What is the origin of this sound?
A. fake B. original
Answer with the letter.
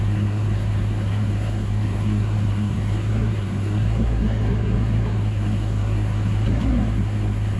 A